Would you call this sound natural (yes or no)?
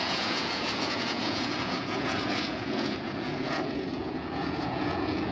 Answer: no